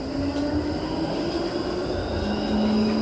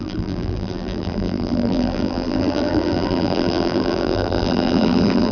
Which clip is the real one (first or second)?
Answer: first